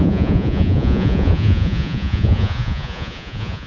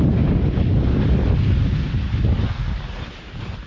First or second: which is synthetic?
first